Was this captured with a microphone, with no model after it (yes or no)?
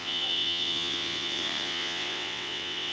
no